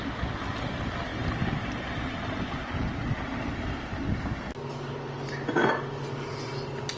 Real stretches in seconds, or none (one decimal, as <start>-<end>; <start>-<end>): 0.0-7.0